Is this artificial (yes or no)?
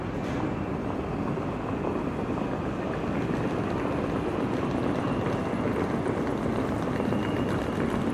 no